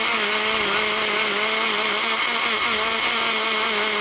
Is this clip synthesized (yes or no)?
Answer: no